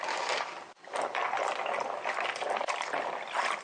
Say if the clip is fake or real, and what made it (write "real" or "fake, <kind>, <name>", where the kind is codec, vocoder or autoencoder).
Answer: real